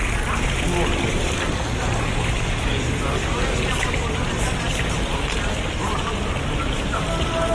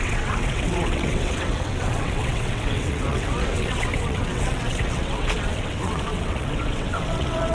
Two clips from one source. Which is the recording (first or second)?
first